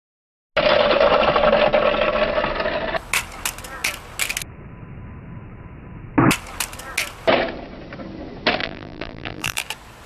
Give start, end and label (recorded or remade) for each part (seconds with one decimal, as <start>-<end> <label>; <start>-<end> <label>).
0.0-8.6 recorded; 8.6-9.6 remade; 9.6-10.1 recorded